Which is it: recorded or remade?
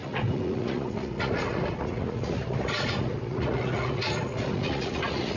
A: remade